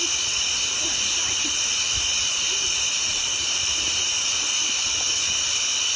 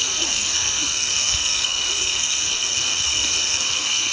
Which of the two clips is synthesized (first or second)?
second